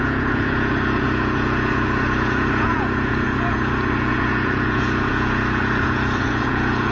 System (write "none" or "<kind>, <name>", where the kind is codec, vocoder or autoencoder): vocoder, Vocos